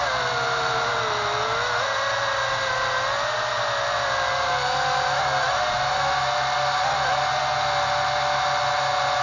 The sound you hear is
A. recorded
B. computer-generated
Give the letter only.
A